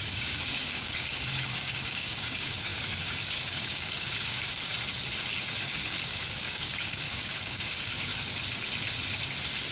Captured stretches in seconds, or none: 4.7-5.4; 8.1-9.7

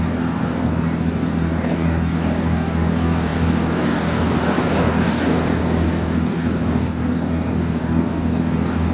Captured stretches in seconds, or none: none

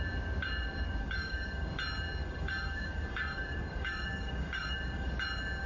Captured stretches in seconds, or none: 0.0-1.0; 1.7-2.2; 5.1-5.7

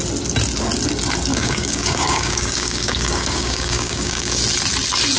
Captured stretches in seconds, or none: 0.0-1.3; 4.4-5.2

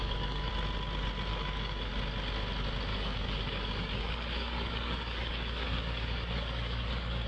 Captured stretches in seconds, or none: 0.5-1.3; 1.9-2.9

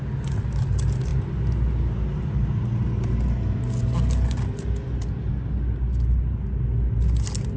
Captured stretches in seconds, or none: 0.0-7.6